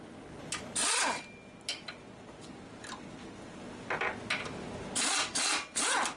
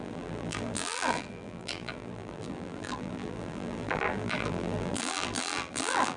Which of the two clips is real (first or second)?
first